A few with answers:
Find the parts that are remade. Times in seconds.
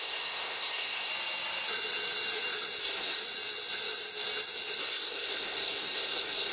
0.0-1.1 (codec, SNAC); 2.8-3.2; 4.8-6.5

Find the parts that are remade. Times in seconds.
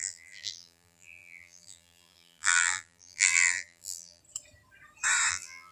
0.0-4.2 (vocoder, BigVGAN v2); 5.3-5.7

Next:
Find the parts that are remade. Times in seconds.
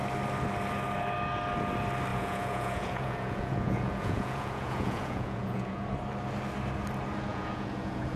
2.1-5.8 (vocoder, Vocos); 7.3-8.2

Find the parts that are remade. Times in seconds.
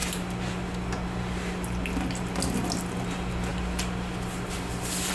none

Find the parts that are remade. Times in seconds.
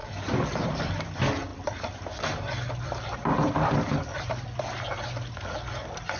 0.0-0.7 (vocoder, BigVGAN v2); 1.5-4.6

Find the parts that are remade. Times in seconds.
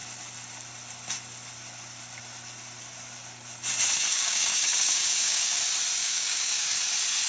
4.1-5.6 (codec, DAC); 6.0-6.8